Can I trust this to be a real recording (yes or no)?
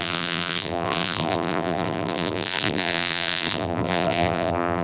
no